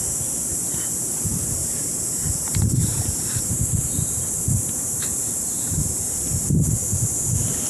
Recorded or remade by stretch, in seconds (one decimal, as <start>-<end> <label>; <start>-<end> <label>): 0.0-0.5 recorded; 0.5-1.1 remade; 1.1-1.6 recorded; 1.6-6.2 remade; 6.2-7.7 recorded